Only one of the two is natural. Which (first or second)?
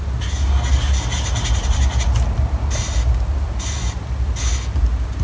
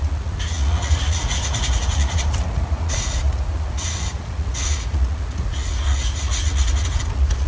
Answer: first